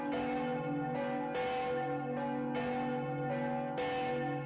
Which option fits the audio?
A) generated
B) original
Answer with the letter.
B